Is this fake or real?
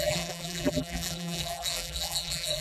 fake